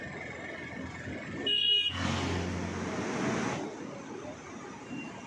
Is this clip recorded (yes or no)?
yes